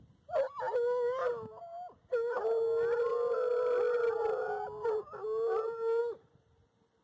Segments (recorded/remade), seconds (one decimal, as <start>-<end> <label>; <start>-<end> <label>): 0.0-7.0 recorded